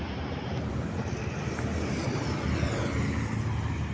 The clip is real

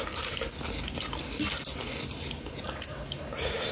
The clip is real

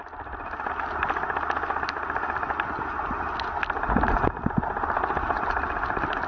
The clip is real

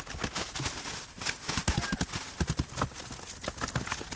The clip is real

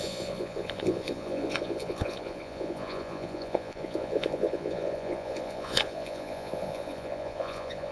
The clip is fake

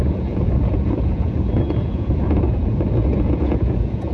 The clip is fake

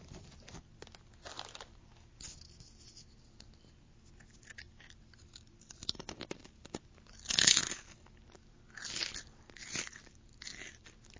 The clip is real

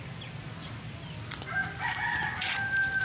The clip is real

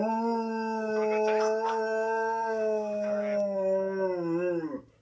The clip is real